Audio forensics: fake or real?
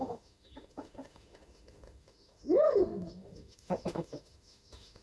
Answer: fake